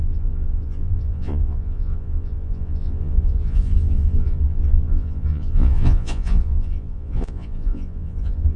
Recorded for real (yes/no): no